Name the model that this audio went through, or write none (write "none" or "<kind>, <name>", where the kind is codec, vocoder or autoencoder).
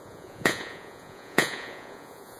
vocoder, Vocos